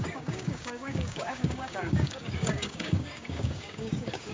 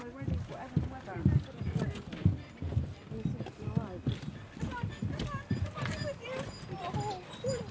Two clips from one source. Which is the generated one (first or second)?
first